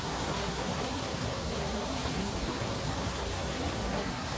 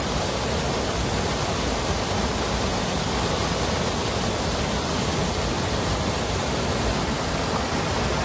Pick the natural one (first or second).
second